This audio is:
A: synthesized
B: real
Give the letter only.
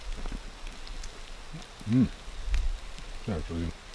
B